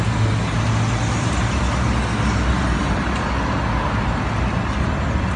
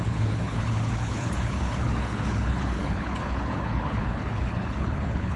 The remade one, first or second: second